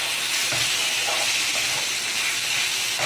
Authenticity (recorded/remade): recorded